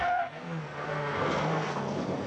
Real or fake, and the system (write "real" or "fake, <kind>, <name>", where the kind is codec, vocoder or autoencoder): fake, codec, SNAC